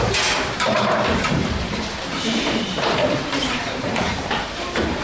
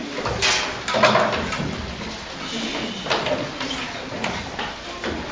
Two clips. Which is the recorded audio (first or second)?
second